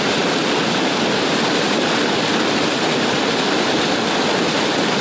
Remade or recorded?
recorded